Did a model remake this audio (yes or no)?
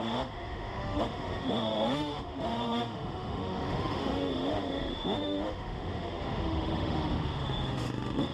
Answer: yes